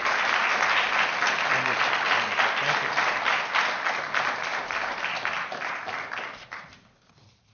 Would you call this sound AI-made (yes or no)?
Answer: no